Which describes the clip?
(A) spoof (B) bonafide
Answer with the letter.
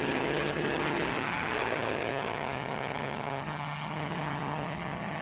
A